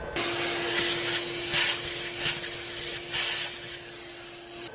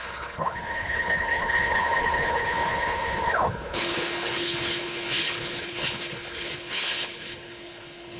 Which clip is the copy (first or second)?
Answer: second